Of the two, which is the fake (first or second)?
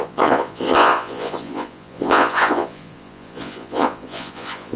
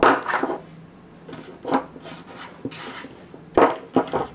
first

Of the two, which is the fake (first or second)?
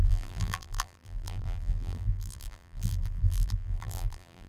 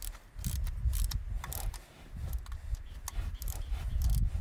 first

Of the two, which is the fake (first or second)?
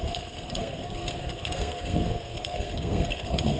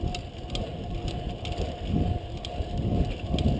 first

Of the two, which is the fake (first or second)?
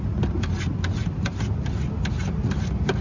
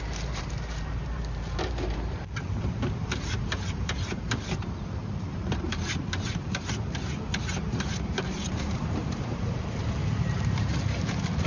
second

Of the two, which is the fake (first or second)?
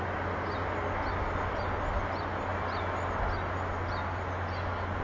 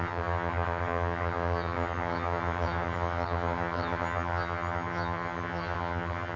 second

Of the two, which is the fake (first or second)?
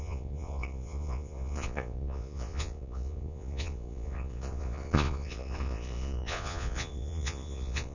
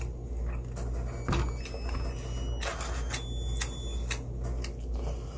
first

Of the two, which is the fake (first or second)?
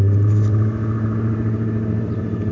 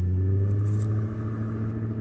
first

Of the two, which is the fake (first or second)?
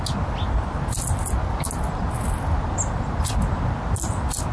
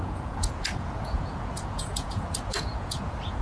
second